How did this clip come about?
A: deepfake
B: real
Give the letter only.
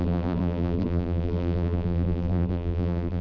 A